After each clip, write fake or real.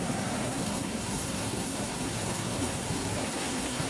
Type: fake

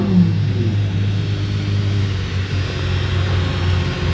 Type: real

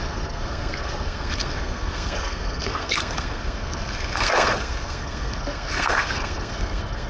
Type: fake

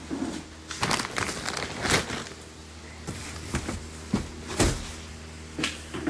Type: real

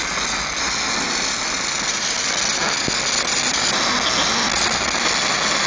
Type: real